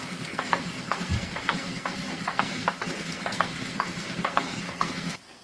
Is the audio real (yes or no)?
no